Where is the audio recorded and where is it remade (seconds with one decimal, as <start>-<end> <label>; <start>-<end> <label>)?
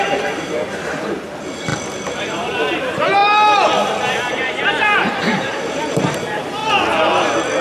0.0-1.7 remade; 1.7-2.2 recorded; 2.2-3.2 remade; 3.2-4.3 recorded; 4.3-6.6 remade; 6.6-7.6 recorded